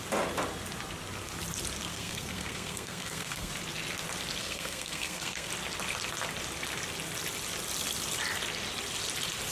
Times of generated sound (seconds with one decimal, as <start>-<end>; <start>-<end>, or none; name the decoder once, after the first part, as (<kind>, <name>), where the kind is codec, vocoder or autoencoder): 1.9-3.5 (codec, SNAC); 4.4-5.5

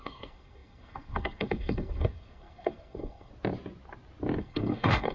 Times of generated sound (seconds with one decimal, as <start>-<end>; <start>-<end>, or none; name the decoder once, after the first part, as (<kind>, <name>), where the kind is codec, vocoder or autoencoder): 0.0-3.3 (codec, SNAC); 4.4-5.1

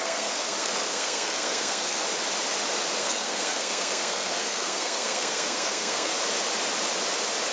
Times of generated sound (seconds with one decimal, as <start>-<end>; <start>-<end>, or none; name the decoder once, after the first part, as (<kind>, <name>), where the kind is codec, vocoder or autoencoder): 0.0-2.0 (codec, SNAC); 3.0-6.1